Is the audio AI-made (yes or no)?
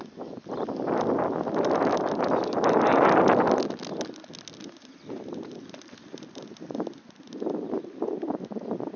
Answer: no